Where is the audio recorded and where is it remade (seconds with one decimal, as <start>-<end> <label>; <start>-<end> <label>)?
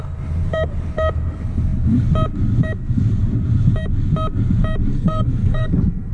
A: 0.0-4.9 recorded; 4.9-6.1 remade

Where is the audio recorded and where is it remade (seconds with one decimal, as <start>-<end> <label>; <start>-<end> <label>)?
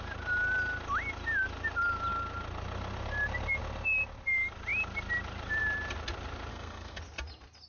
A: 0.0-6.5 recorded; 6.5-7.0 remade; 7.0-7.7 recorded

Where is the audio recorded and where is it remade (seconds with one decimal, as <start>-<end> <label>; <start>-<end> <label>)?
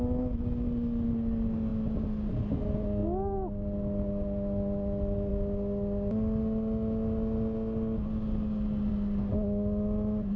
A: 0.0-10.4 recorded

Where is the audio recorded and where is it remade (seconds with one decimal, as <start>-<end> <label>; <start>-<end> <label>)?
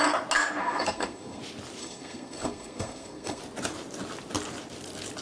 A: 0.0-0.6 recorded; 0.6-1.4 remade; 1.4-1.8 recorded; 1.8-3.4 remade; 3.4-5.2 recorded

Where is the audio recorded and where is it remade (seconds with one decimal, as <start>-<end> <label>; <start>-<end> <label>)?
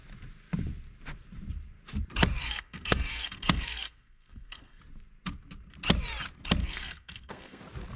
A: 0.0-2.4 recorded; 2.4-4.8 remade; 4.8-6.6 recorded; 6.6-7.6 remade; 7.6-8.0 recorded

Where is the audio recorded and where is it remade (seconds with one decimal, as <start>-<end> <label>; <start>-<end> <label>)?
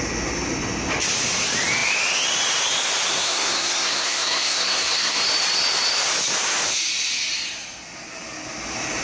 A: 0.0-3.1 recorded; 3.1-5.2 remade; 5.2-9.0 recorded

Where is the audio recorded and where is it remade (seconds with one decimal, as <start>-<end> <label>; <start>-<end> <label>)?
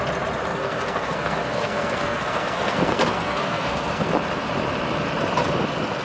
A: 0.0-0.5 recorded; 0.5-4.1 remade; 4.1-6.0 recorded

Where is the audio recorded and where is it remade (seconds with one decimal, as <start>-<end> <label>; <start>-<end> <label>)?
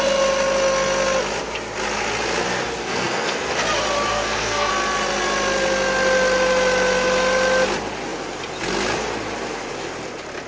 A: 0.0-2.8 recorded; 2.8-3.5 remade; 3.5-4.1 recorded; 4.1-4.7 remade; 4.7-10.5 recorded